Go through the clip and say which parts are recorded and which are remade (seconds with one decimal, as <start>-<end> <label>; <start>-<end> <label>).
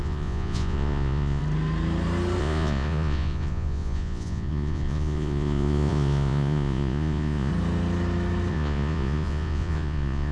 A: 0.0-1.4 remade; 1.4-2.4 recorded; 2.4-7.5 remade; 7.5-8.5 recorded; 8.5-10.3 remade